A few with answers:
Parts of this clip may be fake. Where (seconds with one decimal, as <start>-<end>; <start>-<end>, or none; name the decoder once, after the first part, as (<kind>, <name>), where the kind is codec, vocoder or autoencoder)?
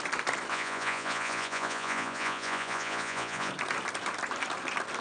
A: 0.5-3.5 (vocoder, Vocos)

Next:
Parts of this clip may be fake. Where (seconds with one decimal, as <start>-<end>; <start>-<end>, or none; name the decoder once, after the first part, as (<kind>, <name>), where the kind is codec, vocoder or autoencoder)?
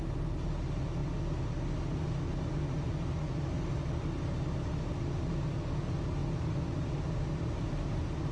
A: none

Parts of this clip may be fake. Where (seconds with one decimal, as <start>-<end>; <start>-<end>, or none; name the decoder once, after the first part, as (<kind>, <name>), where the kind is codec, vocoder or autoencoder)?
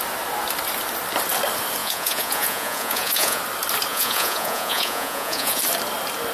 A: 1.8-3.4 (vocoder, Vocos); 3.9-5.6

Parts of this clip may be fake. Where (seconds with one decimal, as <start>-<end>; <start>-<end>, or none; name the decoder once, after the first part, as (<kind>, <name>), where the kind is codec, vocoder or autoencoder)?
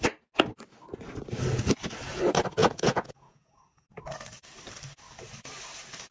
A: 2.6-4.0 (vocoder, Vocos)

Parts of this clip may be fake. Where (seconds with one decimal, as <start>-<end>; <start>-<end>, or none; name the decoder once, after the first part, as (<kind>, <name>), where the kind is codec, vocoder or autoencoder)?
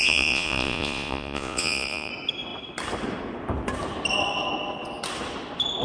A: 0.0-2.1 (vocoder, Vocos)